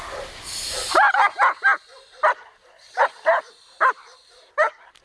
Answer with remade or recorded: recorded